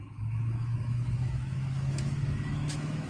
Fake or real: fake